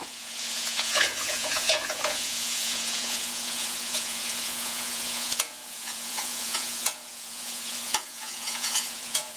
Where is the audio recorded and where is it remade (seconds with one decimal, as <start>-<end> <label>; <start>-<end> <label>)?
0.0-9.4 remade